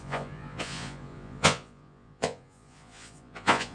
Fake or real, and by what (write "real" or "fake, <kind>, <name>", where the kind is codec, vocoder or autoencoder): fake, vocoder, Vocos